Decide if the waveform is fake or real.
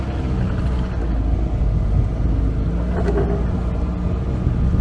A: real